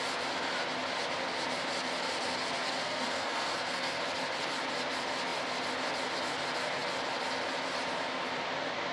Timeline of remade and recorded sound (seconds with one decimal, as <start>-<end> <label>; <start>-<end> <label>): 0.0-2.8 recorded; 2.8-4.0 remade; 4.0-8.9 recorded